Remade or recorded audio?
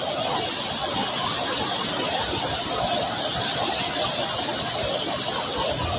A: recorded